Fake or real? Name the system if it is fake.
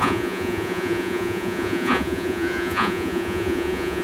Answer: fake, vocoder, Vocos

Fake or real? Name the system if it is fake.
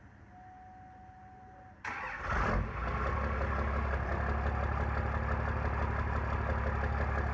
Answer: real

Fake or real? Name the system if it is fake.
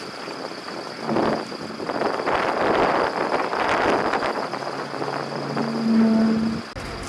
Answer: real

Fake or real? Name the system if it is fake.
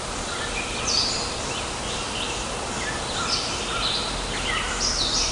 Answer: real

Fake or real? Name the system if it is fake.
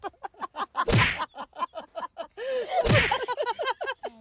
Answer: real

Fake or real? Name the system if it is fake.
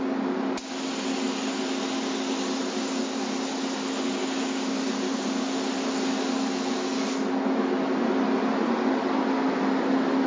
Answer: real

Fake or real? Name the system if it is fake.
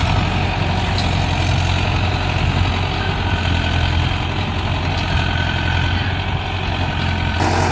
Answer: real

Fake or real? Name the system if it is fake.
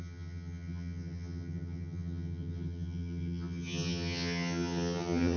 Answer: fake, vocoder, HiFi-GAN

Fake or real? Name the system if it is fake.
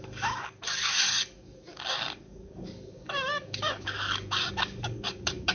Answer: fake, codec, DAC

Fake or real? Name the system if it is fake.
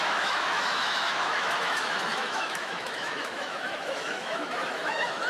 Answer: fake, autoencoder, DAC-VAE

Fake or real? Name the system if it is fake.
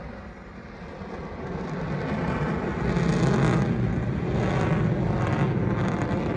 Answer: real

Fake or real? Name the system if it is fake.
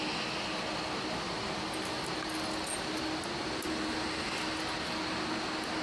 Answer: real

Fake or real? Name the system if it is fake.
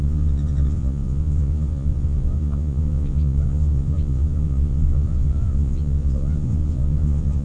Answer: fake, vocoder, Vocos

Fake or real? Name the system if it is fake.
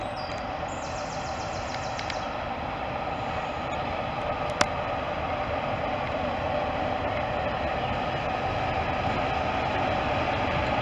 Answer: real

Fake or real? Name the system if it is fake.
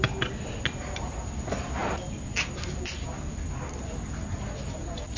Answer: real